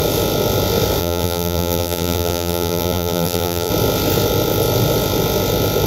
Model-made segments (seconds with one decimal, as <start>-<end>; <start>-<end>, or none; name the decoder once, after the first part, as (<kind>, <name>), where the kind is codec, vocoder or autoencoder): 1.0-3.7 (vocoder, BigVGAN v2)